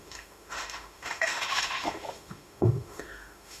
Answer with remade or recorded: remade